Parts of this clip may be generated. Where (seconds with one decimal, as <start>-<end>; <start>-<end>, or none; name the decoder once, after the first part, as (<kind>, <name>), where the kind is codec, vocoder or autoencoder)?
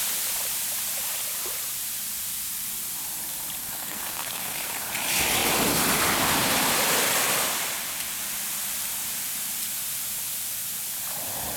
3.6-4.9 (codec, SNAC)